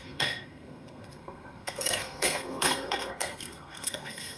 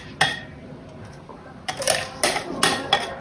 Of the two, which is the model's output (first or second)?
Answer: first